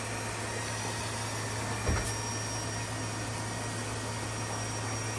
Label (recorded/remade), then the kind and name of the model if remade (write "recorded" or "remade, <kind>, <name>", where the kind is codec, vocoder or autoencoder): recorded